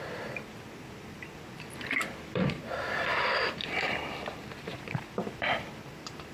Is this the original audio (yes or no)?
no